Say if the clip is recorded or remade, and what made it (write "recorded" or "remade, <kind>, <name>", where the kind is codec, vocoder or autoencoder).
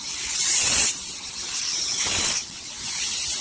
remade, vocoder, WaveNeXt